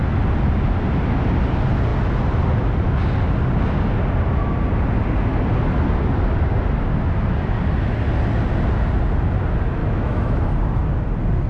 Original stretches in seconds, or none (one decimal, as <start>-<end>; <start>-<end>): 0.0-9.8; 10.5-11.5